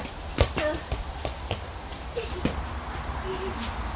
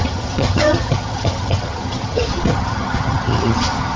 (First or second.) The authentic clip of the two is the first